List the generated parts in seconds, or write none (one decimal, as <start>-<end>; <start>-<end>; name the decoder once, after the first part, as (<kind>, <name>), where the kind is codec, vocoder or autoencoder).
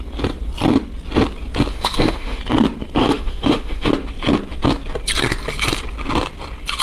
1.7-2.4 (autoencoder, DAC-VAE); 3.0-3.9